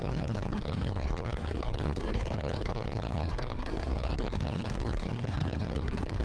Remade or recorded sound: remade